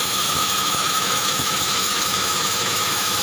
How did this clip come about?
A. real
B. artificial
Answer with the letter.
B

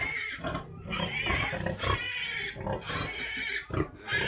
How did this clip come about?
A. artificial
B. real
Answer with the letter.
B